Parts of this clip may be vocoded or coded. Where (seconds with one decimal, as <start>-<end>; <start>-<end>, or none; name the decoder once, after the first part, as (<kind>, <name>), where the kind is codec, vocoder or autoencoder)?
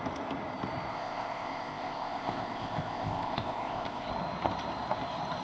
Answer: 0.9-4.1 (codec, ZipCodec)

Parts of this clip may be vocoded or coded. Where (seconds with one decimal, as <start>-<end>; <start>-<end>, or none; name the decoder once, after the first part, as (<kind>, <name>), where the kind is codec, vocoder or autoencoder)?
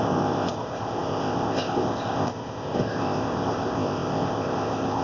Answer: 0.0-5.0 (codec, ZipCodec)